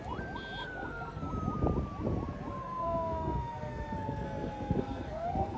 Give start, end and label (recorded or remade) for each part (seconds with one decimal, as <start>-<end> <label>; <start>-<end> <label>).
0.0-0.6 recorded; 0.6-1.3 remade; 1.3-2.6 recorded; 2.6-5.6 remade